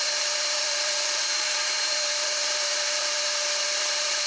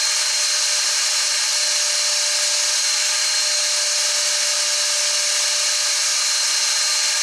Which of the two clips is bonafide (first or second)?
second